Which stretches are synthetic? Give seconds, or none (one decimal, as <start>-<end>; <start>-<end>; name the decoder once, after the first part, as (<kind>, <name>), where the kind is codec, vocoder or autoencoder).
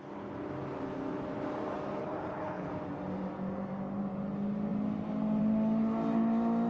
2.0-2.7 (codec, HILCodec)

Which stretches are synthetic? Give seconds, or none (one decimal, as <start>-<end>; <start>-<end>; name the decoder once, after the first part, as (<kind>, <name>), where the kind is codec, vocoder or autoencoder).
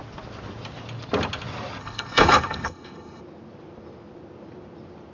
1.8-3.2 (codec, HILCodec)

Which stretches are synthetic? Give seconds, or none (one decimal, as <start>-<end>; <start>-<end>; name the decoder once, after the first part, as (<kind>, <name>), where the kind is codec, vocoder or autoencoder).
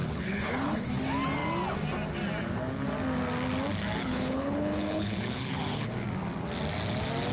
0.0-0.9 (codec, HILCodec); 4.0-5.9